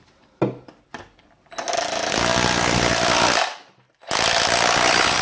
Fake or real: real